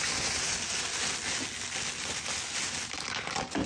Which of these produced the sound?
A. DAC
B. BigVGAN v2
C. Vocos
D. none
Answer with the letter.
D